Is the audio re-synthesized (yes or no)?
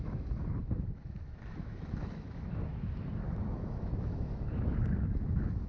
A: yes